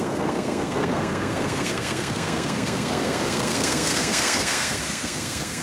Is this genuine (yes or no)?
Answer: no